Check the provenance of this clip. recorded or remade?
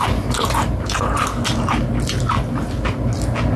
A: recorded